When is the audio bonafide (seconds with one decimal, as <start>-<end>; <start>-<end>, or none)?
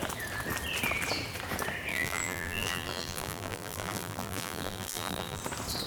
0.0-1.9; 5.4-5.9